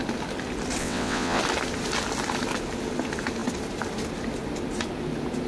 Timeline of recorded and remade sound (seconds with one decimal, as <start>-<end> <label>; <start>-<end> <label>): 0.0-0.8 recorded; 0.8-1.4 remade; 1.4-5.5 recorded